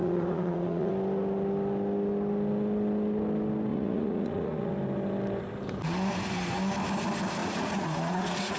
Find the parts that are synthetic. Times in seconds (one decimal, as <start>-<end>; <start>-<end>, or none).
0.0-0.9; 3.7-4.7; 7.4-8.6